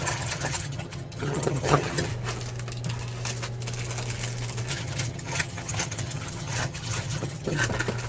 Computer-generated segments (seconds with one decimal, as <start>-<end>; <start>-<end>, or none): 0.0-2.1; 4.7-7.6